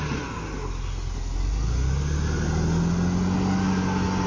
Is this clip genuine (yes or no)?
yes